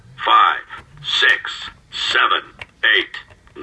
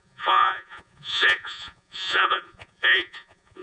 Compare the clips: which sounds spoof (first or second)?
second